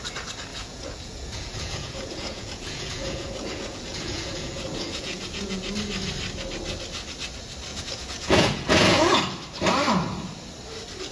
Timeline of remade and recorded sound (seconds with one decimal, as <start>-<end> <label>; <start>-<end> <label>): 0.0-0.5 recorded; 0.5-5.7 remade; 5.7-7.7 recorded; 7.7-9.2 remade; 9.2-11.1 recorded